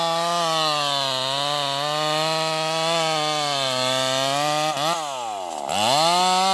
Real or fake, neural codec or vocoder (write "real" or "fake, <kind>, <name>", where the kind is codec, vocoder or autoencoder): real